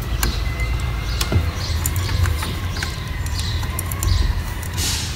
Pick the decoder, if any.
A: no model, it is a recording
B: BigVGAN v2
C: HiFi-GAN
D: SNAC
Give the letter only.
B